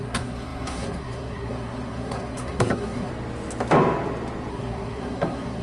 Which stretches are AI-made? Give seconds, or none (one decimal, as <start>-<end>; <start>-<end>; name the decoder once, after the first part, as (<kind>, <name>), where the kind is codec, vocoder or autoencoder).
0.0-3.1 (codec, SNAC); 4.5-5.6